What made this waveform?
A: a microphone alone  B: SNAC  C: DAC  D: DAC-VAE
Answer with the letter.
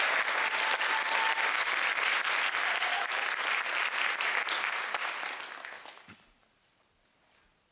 A